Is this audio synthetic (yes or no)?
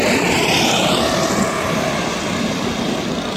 no